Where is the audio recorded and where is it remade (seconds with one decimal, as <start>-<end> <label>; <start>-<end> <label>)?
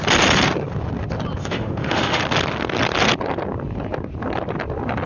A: 0.0-1.4 recorded; 1.4-2.2 remade; 2.2-5.1 recorded